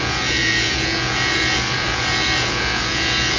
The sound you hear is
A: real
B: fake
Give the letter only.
B